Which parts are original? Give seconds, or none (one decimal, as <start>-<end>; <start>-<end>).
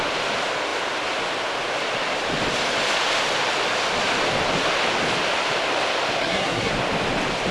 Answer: 0.0-6.2; 6.7-7.5